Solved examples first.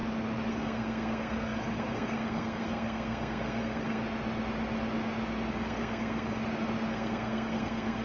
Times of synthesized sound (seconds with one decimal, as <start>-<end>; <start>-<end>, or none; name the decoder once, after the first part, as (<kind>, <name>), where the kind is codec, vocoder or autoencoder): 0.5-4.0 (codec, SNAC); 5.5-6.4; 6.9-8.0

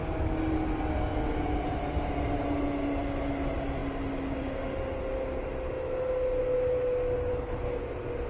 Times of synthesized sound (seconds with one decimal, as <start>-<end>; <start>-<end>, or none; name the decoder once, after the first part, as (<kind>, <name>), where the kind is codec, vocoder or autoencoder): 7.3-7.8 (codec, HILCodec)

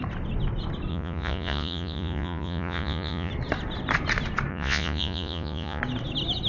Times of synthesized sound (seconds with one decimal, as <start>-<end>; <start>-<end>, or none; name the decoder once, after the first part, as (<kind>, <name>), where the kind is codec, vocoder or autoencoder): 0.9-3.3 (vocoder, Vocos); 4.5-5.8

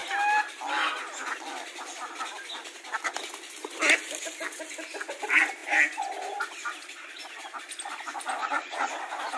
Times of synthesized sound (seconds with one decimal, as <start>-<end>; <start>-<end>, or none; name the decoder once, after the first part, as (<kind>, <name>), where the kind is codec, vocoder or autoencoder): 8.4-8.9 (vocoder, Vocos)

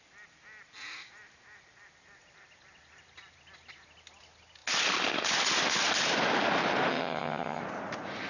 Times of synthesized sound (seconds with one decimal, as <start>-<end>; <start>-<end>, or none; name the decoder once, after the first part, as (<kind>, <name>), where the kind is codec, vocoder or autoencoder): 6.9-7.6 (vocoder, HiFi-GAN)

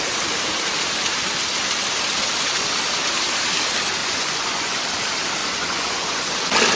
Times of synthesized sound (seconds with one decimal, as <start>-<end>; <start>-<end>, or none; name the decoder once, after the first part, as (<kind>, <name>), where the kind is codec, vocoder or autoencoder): 4.0-4.8 (vocoder, Vocos); 5.4-6.3